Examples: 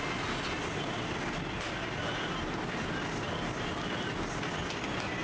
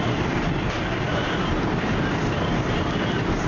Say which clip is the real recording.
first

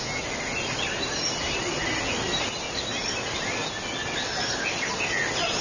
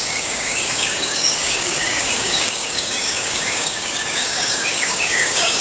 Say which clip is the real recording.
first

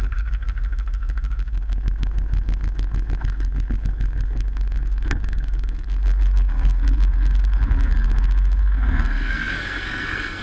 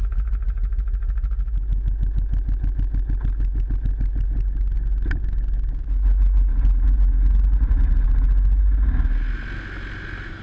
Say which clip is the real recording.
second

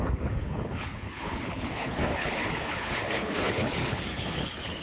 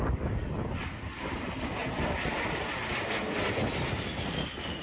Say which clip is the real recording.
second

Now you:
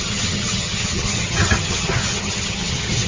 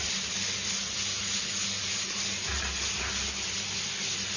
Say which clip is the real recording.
second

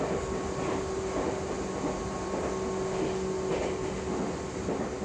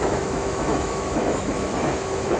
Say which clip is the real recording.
first